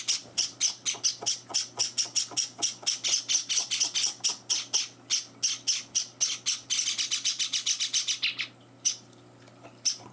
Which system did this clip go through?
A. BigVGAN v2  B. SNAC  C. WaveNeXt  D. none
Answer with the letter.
D